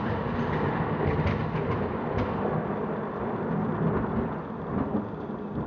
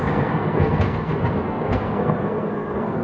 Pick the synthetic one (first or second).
second